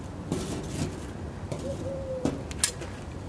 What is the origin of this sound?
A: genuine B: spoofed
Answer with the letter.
A